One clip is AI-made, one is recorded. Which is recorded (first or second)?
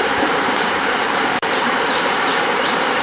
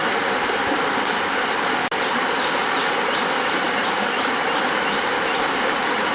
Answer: second